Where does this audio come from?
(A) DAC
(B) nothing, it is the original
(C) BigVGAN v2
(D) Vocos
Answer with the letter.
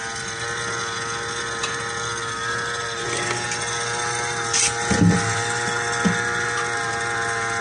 B